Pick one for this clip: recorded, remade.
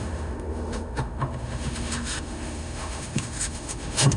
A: remade